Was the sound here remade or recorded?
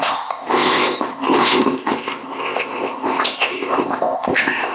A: remade